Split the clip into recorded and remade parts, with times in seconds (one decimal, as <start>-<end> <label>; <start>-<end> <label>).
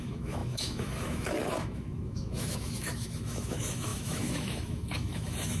0.0-5.6 remade